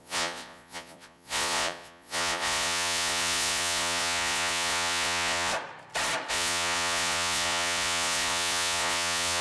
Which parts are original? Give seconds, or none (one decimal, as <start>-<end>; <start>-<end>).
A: 5.5-6.3